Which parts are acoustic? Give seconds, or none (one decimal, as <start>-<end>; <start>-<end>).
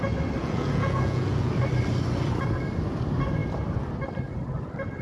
0.0-0.4; 1.5-5.0